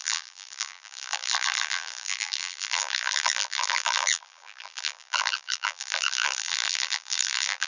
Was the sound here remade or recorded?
remade